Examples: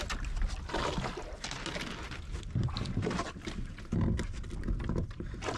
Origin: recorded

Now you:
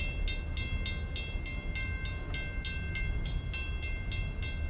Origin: recorded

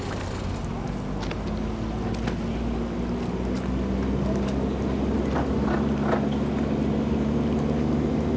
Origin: recorded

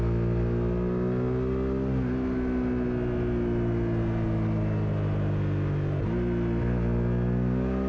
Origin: recorded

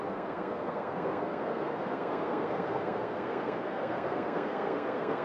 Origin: remade